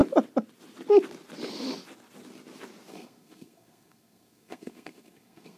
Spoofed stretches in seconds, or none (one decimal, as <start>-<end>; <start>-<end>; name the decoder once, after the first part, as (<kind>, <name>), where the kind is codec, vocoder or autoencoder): 2.9-5.6 (codec, SNAC)